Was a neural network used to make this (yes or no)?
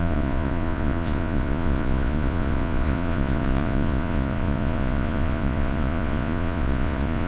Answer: yes